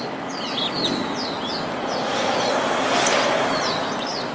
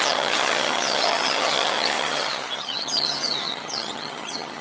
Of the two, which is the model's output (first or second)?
second